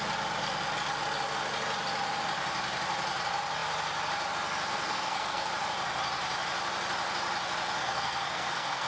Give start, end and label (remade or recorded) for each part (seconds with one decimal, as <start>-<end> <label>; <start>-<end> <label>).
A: 0.0-4.7 recorded; 4.7-5.5 remade; 5.5-7.8 recorded; 7.8-8.9 remade